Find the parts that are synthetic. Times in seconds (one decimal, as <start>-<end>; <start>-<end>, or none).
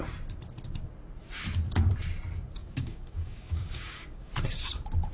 2.6-4.3